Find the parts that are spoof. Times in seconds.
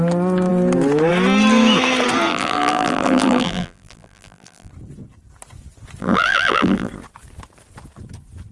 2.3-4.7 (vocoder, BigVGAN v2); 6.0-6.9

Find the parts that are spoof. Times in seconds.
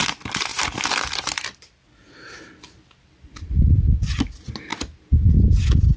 0.5-4.1 (vocoder, BigVGAN v2)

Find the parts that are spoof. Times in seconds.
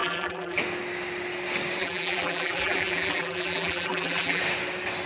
0.0-0.6 (vocoder, BigVGAN v2); 1.8-4.4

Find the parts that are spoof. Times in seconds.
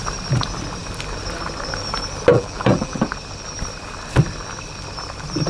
2.3-3.0 (vocoder, BigVGAN v2)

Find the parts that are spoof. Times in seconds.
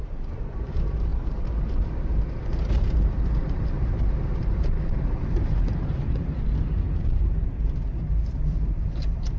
0.0-9.4 (vocoder, BigVGAN v2)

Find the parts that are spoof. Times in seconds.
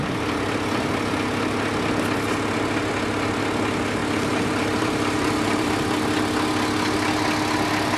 0.0-0.9 (vocoder, BigVGAN v2); 4.0-5.8